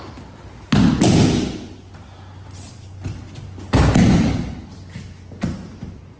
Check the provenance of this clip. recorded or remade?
recorded